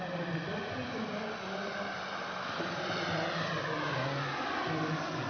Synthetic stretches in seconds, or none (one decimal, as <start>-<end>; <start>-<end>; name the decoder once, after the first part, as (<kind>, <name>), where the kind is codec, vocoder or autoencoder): none